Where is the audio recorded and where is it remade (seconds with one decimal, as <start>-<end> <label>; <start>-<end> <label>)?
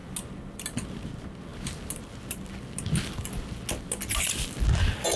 0.0-5.2 recorded